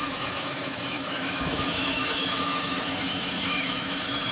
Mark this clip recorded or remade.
remade